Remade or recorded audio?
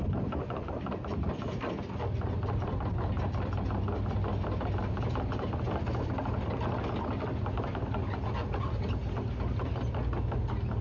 recorded